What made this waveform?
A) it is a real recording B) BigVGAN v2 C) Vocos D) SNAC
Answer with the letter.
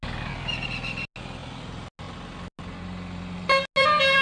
A